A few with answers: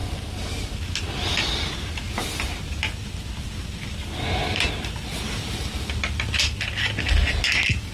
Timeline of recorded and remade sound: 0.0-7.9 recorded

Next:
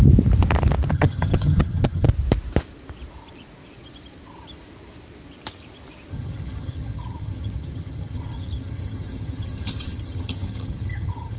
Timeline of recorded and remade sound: 0.0-0.9 recorded; 0.9-2.1 remade; 2.1-6.1 recorded; 6.1-11.4 remade

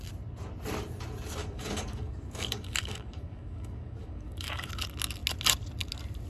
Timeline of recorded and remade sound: 0.0-1.4 recorded; 1.4-4.7 remade; 4.7-6.3 recorded

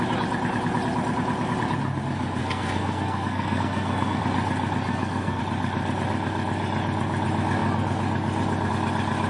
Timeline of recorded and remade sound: 0.0-2.4 recorded; 2.4-4.2 remade; 4.2-4.9 recorded; 4.9-5.4 remade; 5.4-9.3 recorded